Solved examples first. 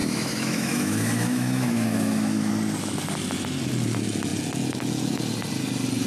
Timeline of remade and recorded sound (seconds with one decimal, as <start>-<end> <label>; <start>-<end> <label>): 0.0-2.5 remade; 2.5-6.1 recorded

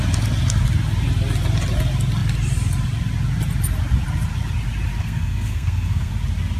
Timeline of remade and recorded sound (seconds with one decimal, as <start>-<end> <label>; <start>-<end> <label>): 0.0-5.0 recorded; 5.0-6.1 remade; 6.1-6.6 recorded

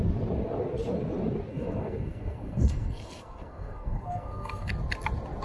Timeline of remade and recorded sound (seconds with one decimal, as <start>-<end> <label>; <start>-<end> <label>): 0.0-1.5 recorded; 1.5-4.7 remade; 4.7-5.4 recorded